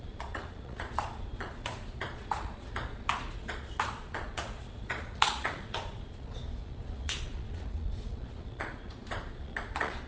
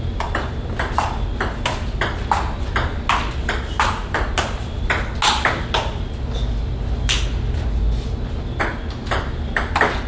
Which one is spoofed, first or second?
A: first